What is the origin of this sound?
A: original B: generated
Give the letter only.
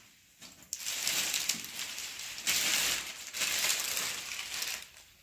A